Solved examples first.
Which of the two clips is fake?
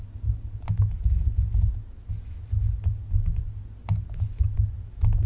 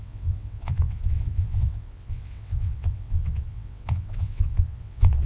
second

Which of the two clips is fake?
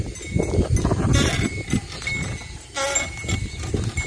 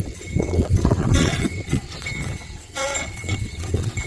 second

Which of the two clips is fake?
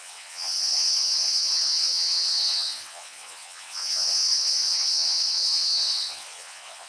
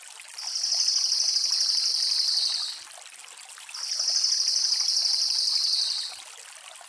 first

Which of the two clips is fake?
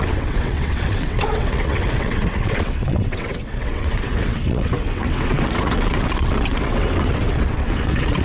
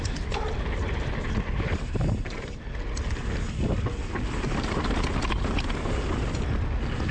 first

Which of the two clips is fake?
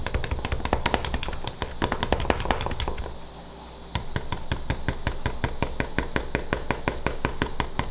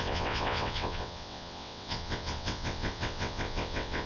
second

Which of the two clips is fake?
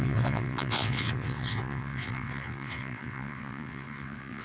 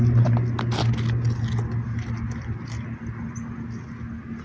first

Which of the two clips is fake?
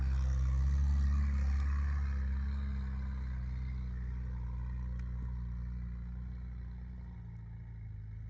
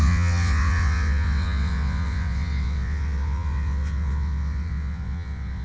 second